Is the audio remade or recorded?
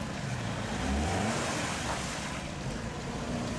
remade